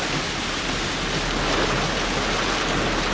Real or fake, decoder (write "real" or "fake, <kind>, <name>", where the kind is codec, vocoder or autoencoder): real